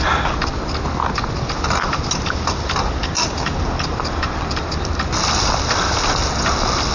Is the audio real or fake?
real